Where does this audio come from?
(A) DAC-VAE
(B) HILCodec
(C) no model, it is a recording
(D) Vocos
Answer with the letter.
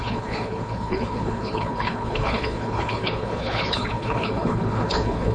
B